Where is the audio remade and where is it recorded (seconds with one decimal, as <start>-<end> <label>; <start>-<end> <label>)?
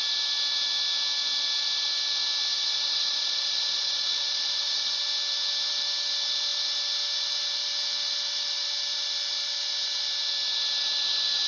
0.0-2.5 recorded; 2.5-5.0 remade; 5.0-11.5 recorded